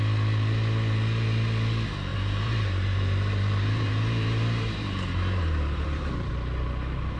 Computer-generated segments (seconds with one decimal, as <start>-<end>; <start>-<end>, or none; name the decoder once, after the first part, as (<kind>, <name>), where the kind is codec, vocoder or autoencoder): 2.1-6.3 (vocoder, BigVGAN v2)